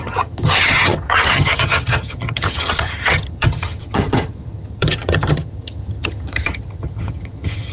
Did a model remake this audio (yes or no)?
yes